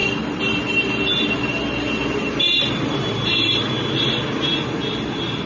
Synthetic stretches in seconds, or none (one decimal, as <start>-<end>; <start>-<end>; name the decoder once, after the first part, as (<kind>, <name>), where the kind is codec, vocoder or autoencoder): none